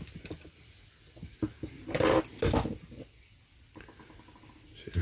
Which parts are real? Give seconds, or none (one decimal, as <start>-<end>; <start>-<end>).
0.0-5.0